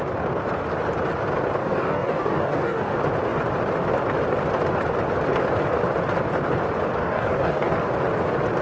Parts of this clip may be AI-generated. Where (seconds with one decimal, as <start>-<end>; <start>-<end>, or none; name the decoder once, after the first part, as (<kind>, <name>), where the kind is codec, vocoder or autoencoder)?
1.6-2.9 (codec, DAC); 7.0-7.7